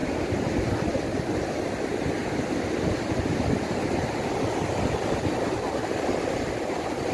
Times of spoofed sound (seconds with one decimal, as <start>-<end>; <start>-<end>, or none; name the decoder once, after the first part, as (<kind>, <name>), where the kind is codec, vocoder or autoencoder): 0.0-7.1 (vocoder, BigVGAN v2)